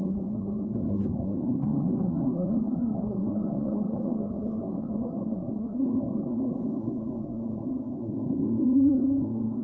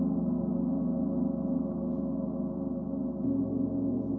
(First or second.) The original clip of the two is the second